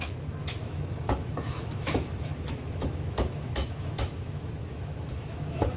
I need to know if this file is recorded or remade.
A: remade